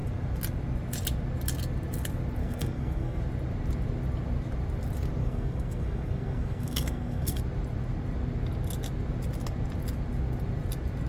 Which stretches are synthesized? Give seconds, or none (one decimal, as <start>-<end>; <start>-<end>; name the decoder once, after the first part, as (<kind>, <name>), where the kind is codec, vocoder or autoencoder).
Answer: 2.4-3.2 (codec, SNAC); 5.2-7.4